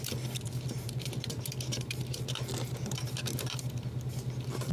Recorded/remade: remade